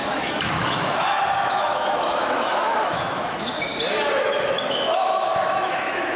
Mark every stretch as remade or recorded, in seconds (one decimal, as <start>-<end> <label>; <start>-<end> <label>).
0.0-3.7 remade; 3.7-4.2 recorded; 4.2-6.2 remade

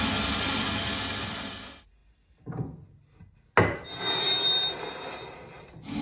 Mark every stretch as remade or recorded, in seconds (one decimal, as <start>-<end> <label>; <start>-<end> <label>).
0.0-6.0 recorded

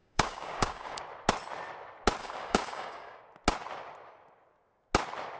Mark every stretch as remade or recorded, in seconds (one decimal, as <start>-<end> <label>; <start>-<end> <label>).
0.0-1.0 remade; 1.0-2.2 recorded; 2.2-3.2 remade; 3.2-5.4 recorded

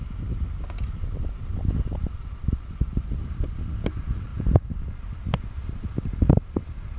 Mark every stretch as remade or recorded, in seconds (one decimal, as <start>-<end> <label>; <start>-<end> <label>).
0.0-4.3 recorded; 4.3-4.9 remade; 4.9-7.0 recorded

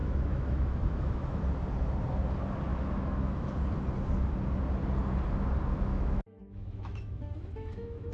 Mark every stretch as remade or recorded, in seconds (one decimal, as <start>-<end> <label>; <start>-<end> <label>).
0.0-1.4 remade; 1.4-2.7 recorded; 2.7-3.5 remade; 3.5-5.9 recorded; 5.9-8.1 remade

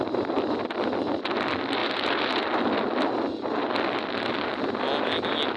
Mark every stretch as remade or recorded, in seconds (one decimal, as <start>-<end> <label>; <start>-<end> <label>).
0.0-5.6 recorded